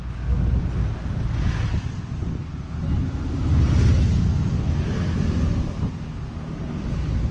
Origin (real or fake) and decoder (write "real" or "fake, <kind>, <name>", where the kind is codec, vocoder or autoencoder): real